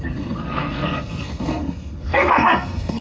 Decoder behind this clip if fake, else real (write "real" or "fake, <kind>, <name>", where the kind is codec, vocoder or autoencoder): fake, codec, SNAC